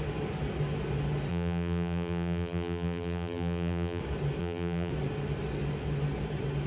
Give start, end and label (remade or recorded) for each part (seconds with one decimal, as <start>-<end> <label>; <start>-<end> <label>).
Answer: 0.0-1.3 recorded; 1.3-4.0 remade; 4.0-4.4 recorded; 4.4-4.9 remade; 4.9-6.7 recorded